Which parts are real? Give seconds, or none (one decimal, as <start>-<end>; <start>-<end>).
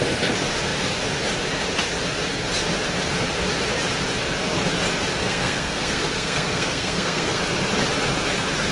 0.0-5.2; 7.4-8.7